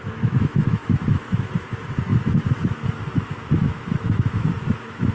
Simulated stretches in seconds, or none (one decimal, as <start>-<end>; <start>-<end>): 0.0-5.1